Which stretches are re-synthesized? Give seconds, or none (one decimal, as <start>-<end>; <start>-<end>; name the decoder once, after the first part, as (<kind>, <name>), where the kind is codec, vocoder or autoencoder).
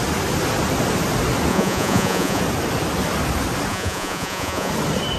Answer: 1.5-2.4 (vocoder, Vocos); 3.7-4.7